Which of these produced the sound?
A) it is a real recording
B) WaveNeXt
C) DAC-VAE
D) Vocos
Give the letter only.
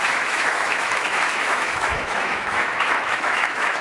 C